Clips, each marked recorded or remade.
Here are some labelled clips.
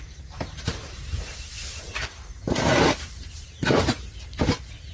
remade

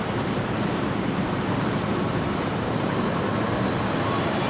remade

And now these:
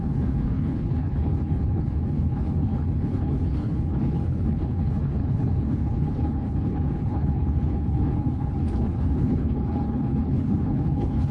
remade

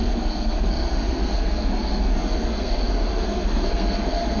remade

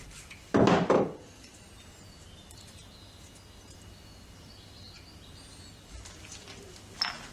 recorded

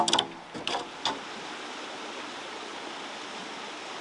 recorded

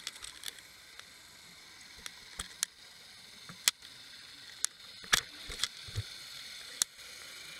recorded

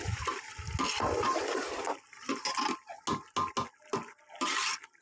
recorded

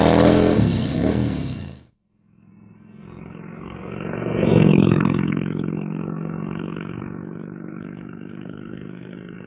remade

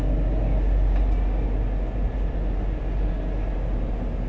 recorded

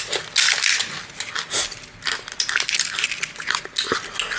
recorded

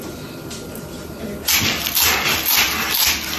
recorded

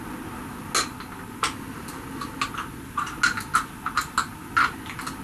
recorded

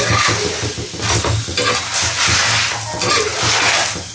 recorded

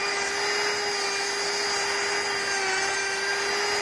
recorded